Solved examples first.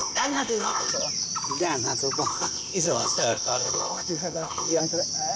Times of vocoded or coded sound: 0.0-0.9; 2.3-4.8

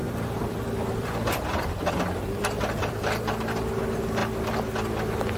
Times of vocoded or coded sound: 0.0-3.2

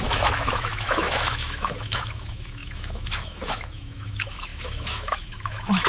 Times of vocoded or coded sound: 0.0-5.9

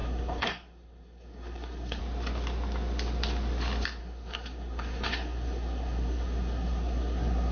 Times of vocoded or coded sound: 0.0-2.0; 4.0-7.5

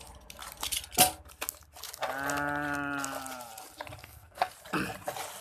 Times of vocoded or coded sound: 4.0-4.5